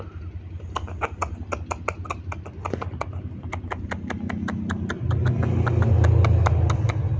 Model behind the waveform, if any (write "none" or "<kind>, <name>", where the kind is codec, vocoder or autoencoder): none